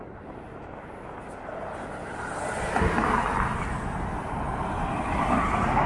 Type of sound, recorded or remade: recorded